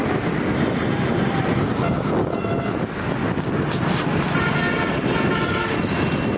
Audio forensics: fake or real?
real